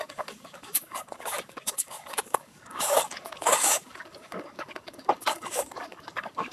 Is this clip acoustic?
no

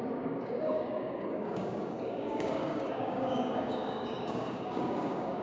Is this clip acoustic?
no